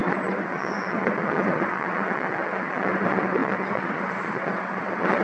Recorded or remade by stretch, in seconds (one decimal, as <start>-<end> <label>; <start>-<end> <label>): 0.0-5.2 remade